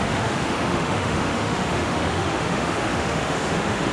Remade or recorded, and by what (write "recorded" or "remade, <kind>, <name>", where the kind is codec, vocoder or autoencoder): remade, autoencoder, DAC-VAE